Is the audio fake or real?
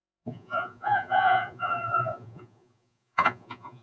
fake